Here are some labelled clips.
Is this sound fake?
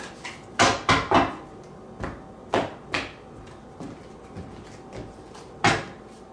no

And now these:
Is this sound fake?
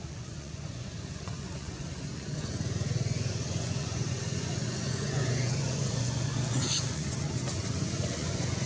yes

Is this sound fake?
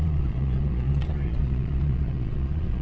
yes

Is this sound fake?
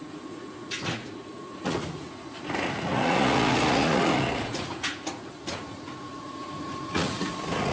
yes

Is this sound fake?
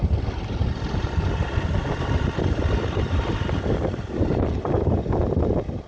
no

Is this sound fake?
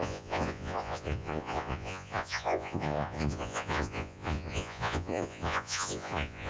yes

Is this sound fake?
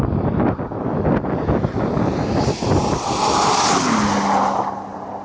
no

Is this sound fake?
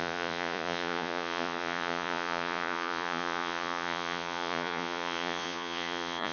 yes